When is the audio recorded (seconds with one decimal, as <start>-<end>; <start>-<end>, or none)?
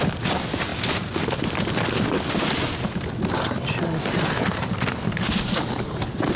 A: 0.0-6.4